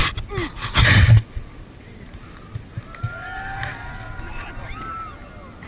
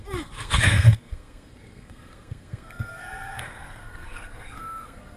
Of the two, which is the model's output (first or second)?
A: second